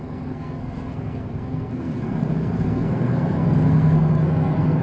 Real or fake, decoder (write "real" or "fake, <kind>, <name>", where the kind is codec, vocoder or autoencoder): fake, codec, SNAC